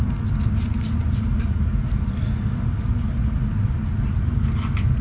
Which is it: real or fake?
real